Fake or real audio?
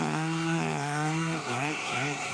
fake